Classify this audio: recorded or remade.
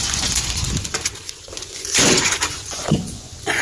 remade